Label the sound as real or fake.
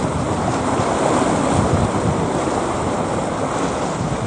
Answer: real